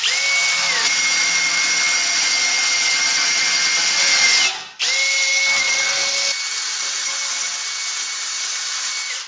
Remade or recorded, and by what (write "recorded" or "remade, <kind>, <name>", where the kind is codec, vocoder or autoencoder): recorded